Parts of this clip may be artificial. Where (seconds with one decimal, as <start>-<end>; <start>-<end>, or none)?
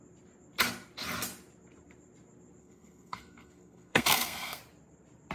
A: 2.6-4.6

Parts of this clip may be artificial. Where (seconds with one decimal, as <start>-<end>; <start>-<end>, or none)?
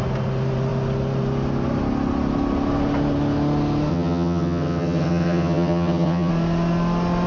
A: 3.9-6.3